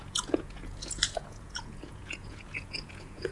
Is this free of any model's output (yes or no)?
no